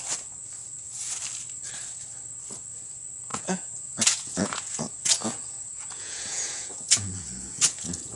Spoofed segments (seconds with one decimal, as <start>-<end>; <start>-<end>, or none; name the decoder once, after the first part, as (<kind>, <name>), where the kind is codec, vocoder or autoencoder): 3.3-8.2 (vocoder, Vocos)